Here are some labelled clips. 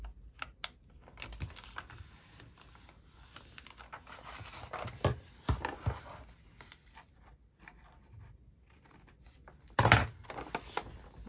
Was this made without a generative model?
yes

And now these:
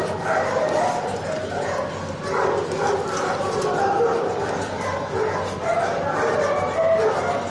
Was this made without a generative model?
yes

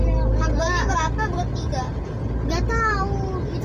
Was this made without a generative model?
yes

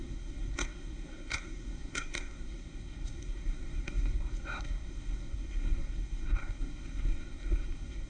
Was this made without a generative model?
no